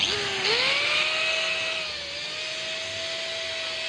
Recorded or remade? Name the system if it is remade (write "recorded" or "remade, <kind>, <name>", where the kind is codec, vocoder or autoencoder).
recorded